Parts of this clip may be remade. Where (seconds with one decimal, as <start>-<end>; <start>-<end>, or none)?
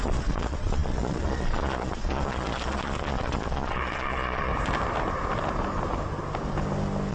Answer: 0.0-4.5